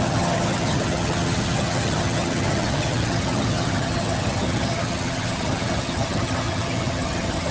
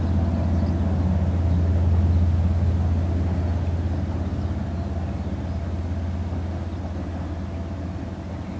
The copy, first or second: first